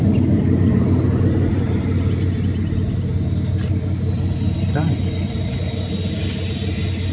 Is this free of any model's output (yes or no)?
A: yes